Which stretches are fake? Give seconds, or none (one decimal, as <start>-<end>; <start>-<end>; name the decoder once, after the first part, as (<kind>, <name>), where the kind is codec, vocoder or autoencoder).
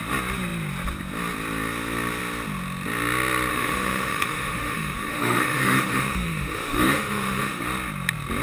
3.5-7.6 (autoencoder, DAC-VAE)